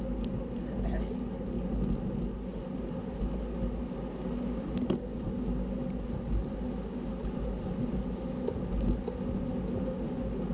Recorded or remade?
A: recorded